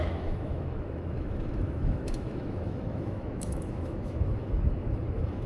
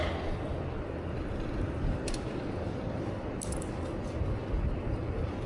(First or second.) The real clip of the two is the second